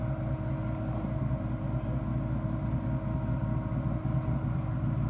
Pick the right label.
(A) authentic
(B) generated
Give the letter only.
A